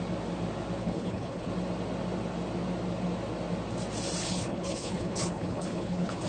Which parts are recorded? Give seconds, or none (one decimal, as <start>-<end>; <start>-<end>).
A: 0.0-0.8; 1.5-4.2